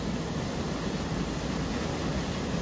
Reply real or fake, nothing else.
real